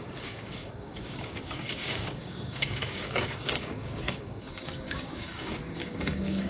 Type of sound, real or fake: fake